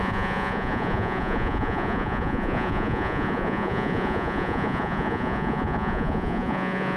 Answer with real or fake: fake